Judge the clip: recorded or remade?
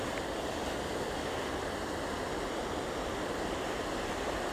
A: recorded